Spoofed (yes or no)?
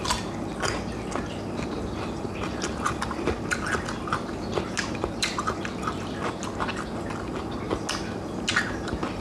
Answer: no